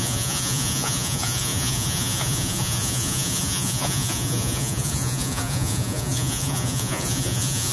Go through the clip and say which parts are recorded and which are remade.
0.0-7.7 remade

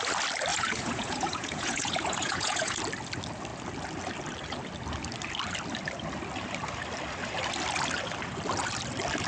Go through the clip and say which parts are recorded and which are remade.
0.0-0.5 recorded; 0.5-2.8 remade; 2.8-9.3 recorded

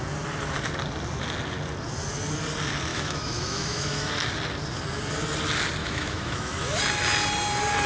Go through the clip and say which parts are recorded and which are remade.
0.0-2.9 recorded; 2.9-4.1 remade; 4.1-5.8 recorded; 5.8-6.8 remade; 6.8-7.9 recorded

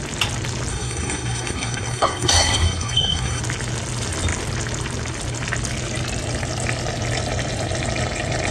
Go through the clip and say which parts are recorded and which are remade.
0.0-0.7 recorded; 0.7-3.4 remade; 3.4-8.5 recorded

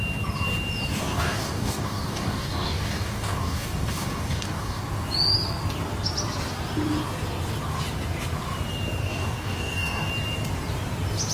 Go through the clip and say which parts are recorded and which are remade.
0.0-0.9 recorded; 0.9-4.8 remade; 4.8-9.0 recorded; 9.0-10.1 remade; 10.1-11.3 recorded